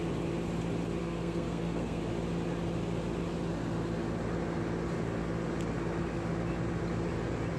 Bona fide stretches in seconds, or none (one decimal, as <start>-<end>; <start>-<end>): 0.0-1.0; 2.0-7.6

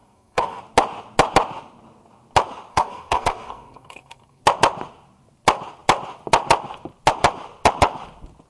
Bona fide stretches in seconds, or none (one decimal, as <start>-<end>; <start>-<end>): 0.6-2.7; 4.4-8.5

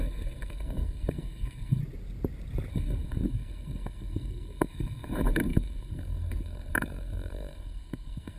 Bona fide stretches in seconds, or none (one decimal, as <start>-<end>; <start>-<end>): 1.8-2.7

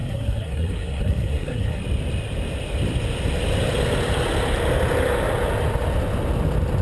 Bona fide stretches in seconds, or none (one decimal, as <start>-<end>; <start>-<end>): 1.8-6.8

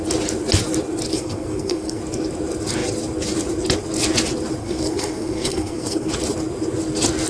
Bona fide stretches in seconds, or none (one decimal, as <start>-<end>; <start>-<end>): 0.0-1.1; 2.0-4.6; 6.1-7.3

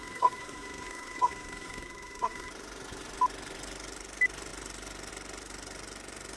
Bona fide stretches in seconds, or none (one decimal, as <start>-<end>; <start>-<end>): 2.5-6.4

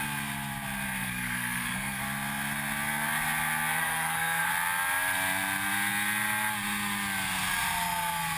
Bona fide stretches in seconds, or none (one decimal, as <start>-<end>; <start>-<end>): 0.0-1.0; 2.0-3.8; 4.5-8.4